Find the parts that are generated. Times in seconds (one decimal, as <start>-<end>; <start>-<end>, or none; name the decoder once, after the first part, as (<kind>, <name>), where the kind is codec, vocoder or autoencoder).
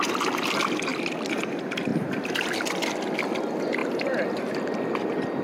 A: none